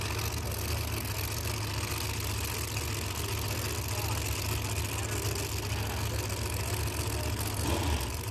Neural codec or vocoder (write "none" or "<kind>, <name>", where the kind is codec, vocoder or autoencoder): none